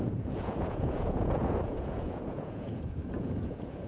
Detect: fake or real fake